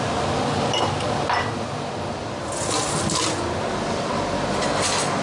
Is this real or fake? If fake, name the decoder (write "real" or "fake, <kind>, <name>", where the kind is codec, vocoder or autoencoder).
real